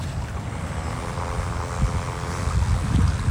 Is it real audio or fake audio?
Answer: real